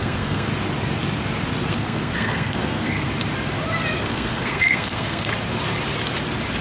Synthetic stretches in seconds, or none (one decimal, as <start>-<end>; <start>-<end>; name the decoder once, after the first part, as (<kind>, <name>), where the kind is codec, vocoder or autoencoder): 0.0-0.5 (codec, SNAC); 1.7-3.1; 4.0-5.3

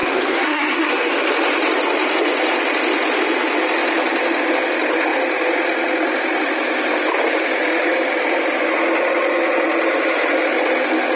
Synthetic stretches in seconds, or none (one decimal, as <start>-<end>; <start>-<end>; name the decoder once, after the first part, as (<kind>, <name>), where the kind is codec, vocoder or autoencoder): 0.0-1.1 (codec, SNAC)